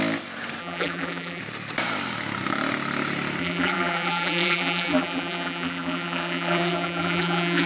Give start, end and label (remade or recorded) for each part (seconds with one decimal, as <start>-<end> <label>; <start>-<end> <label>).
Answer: 0.0-0.6 recorded; 0.6-1.4 remade; 1.4-3.4 recorded; 3.4-7.7 remade